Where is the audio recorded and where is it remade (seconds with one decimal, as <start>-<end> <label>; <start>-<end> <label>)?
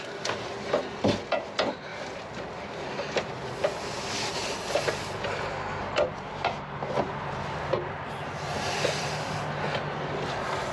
0.0-10.7 recorded